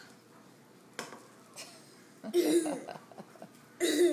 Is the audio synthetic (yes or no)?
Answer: no